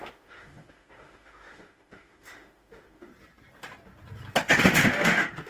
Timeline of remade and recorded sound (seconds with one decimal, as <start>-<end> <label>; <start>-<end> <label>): 0.0-3.1 remade; 3.1-4.6 recorded; 4.6-5.5 remade